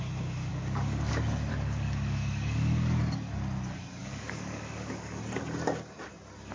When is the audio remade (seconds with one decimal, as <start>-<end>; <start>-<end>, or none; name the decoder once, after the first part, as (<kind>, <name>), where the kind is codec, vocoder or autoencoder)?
0.5-1.1 (codec, DAC); 1.5-3.0; 4.0-5.2